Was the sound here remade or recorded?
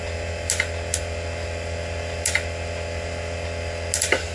recorded